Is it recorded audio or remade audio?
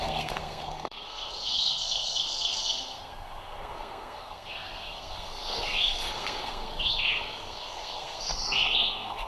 remade